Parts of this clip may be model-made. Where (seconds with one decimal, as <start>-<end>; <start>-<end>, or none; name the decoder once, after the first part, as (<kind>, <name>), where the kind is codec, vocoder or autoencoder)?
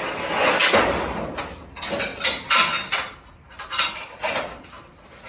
none